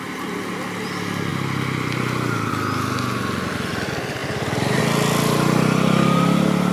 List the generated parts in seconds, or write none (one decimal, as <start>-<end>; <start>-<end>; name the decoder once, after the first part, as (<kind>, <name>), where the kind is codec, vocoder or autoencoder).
none